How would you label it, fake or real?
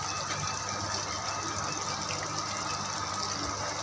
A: real